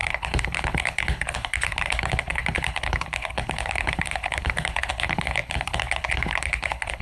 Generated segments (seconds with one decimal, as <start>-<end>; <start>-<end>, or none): 0.0-7.0